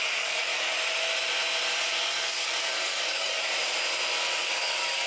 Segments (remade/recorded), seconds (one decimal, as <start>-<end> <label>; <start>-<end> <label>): 0.0-0.7 remade; 0.7-1.9 recorded; 1.9-3.6 remade; 3.6-4.4 recorded; 4.4-5.1 remade